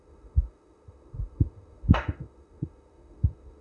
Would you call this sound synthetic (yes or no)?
yes